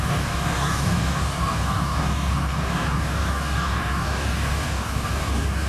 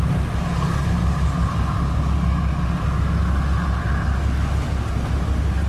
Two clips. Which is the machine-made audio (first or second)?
first